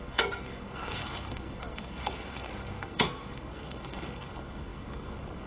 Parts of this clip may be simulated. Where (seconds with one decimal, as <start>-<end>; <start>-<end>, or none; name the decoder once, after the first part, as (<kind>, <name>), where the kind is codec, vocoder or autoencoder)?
0.0-5.5 (codec, SNAC)